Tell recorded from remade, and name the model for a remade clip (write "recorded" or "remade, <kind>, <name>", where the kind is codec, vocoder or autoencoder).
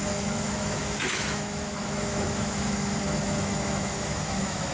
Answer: remade, autoencoder, DAC-VAE